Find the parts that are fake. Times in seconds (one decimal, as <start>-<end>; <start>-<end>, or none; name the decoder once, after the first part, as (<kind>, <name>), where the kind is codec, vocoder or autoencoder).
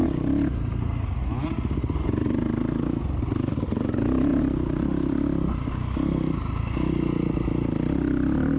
none